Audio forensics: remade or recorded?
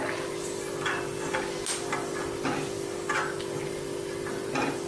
recorded